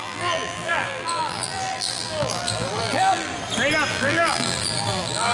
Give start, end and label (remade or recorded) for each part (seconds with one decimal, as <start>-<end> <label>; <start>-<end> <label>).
0.0-3.3 remade; 3.3-3.9 recorded; 3.9-5.3 remade